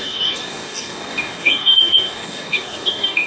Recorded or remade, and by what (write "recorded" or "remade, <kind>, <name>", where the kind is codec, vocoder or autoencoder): remade, codec, DAC